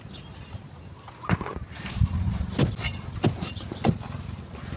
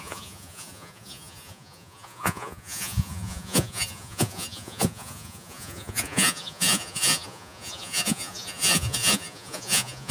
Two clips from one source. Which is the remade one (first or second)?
second